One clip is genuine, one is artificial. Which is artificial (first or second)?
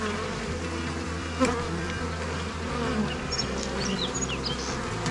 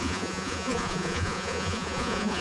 second